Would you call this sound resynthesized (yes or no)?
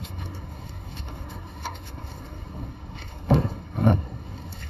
yes